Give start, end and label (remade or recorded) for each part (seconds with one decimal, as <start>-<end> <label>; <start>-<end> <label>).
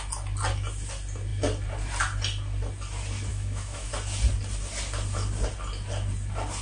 0.0-3.3 recorded; 3.3-3.9 remade; 3.9-6.6 recorded